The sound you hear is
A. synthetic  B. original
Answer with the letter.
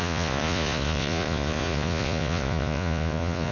A